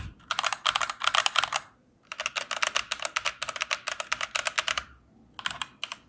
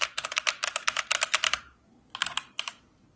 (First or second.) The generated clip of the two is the second